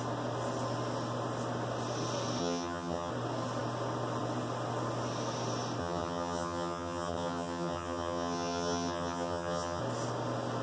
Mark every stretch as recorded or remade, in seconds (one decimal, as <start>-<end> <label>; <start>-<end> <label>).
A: 0.0-2.4 recorded; 2.4-3.1 remade; 3.1-5.8 recorded; 5.8-9.8 remade; 9.8-10.6 recorded